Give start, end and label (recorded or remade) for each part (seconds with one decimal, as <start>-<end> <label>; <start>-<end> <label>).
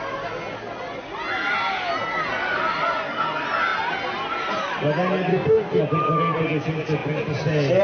0.0-5.3 recorded; 5.3-5.8 remade; 5.8-7.8 recorded